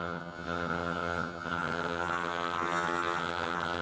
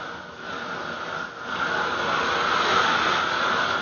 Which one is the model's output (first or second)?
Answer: first